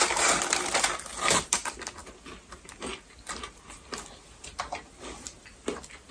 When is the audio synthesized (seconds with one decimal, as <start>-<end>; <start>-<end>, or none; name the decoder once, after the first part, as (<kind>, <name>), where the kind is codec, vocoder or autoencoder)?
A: none